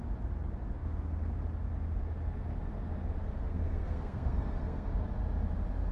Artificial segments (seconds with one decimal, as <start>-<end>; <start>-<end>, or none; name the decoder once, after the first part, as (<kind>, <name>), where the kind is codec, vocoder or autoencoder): 3.2-4.9 (codec, SNAC)